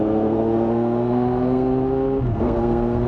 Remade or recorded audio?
remade